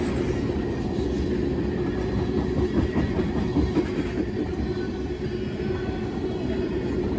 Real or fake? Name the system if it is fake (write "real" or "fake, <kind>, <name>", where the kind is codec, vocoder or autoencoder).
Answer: real